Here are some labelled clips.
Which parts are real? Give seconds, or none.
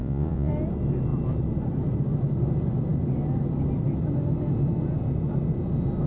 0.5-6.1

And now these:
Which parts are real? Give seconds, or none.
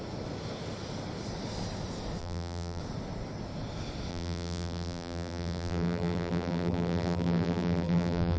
0.0-2.2; 2.8-4.1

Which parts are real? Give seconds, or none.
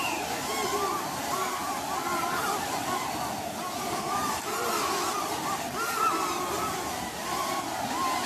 0.0-8.3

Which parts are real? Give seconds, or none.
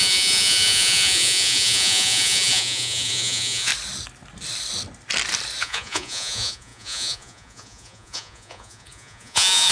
3.7-5.6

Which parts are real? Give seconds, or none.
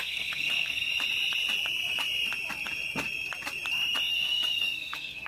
0.9-4.1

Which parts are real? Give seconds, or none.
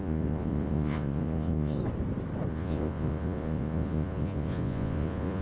1.8-2.5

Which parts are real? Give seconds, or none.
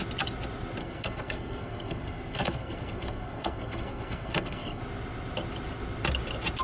0.0-0.8; 4.8-6.6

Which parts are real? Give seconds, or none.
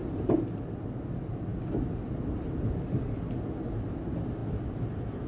0.0-5.3